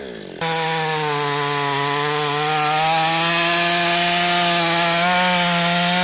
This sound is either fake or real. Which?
real